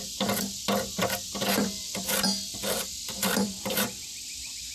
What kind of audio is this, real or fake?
fake